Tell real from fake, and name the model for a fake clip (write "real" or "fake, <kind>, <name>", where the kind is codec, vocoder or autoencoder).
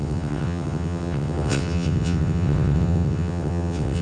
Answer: fake, vocoder, WaveNeXt